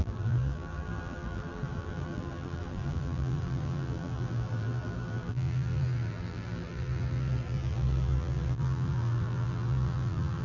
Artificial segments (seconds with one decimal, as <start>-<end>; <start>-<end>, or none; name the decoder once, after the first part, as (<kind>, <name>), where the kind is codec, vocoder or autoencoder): 0.0-10.4 (vocoder, BigVGAN v2)